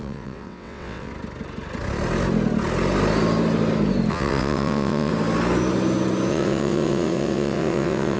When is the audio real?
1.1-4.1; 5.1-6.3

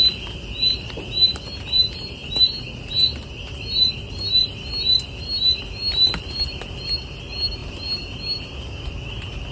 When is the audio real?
0.0-9.5

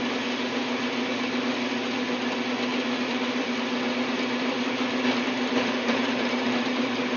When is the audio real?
0.0-2.7; 6.8-7.2

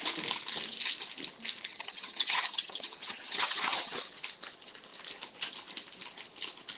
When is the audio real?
0.0-1.7; 4.2-6.8